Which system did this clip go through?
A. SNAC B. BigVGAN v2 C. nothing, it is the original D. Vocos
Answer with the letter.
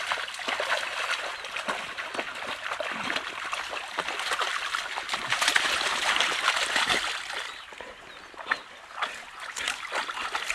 C